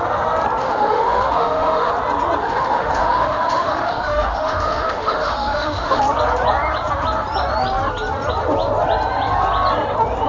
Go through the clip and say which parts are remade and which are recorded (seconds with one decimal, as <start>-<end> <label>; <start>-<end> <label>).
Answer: 0.0-0.6 recorded; 0.6-1.9 remade; 1.9-2.4 recorded; 2.4-6.0 remade; 6.0-10.3 recorded